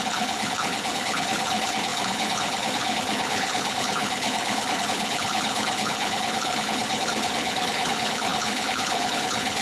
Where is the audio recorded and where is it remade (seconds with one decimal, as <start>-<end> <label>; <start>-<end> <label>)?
0.0-9.6 remade